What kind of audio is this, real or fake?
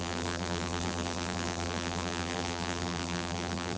fake